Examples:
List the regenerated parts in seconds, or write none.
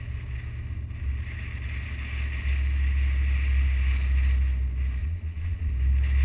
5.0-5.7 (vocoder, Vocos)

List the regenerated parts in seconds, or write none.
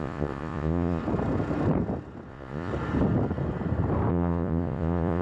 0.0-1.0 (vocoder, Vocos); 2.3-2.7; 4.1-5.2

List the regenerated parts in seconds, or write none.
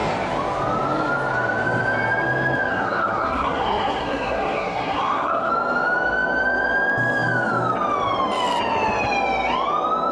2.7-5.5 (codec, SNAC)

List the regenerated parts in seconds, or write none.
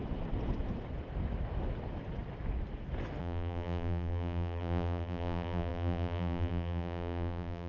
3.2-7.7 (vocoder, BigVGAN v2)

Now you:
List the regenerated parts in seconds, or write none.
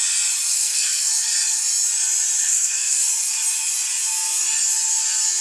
0.5-1.1 (codec, SNAC); 2.4-3.1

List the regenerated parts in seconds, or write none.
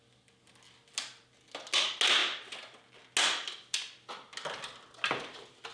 none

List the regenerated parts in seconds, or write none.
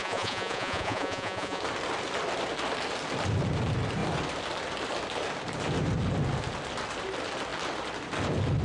0.0-1.6 (vocoder, Vocos)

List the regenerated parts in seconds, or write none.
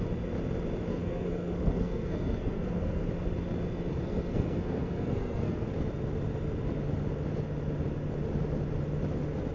0.9-3.0 (codec, SNAC); 4.0-5.6